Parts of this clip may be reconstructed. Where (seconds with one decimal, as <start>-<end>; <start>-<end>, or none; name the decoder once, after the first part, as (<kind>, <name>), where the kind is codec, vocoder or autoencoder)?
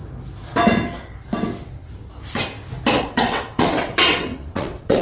3.0-5.0 (vocoder, WaveNeXt)